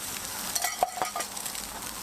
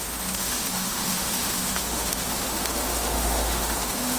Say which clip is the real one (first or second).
first